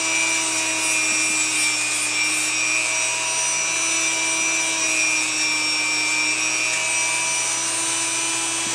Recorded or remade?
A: recorded